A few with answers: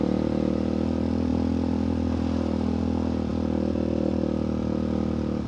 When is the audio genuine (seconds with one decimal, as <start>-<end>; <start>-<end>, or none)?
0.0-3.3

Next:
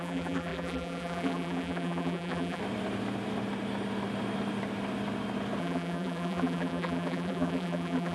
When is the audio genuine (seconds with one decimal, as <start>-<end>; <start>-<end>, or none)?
2.6-5.6

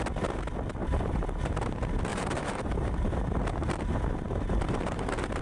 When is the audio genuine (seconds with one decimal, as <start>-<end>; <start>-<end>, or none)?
0.0-0.8; 1.6-2.1

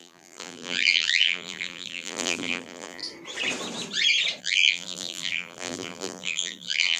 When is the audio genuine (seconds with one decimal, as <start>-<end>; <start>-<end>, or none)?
3.0-4.4

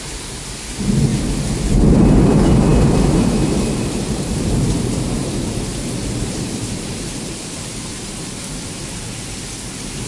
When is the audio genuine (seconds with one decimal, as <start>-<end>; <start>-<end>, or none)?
0.0-2.7; 5.0-7.7; 9.0-10.1

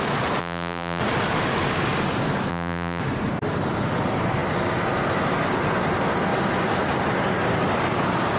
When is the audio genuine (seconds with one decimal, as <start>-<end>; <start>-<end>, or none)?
0.0-0.4; 1.0-2.5; 3.0-8.4